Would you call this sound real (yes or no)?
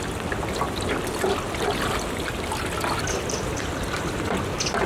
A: yes